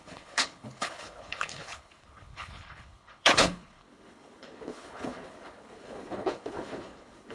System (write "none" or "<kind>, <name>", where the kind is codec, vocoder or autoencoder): codec, HILCodec